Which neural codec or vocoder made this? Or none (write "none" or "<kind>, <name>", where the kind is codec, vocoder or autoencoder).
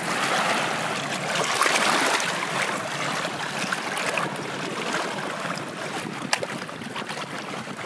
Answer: none